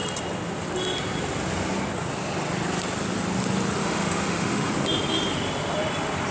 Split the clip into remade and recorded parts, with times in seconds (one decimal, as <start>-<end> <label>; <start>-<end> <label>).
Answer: 0.0-3.8 recorded; 3.8-4.7 remade; 4.7-6.3 recorded